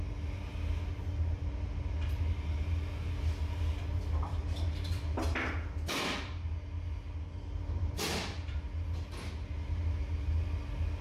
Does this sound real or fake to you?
real